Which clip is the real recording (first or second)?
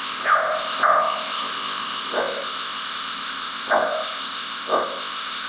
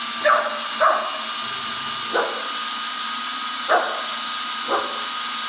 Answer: second